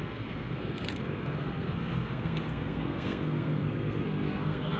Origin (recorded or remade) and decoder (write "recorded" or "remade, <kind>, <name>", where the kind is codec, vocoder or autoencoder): remade, codec, SNAC